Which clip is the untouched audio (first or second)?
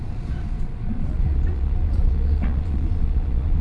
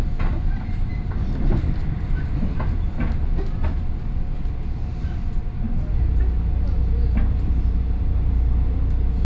second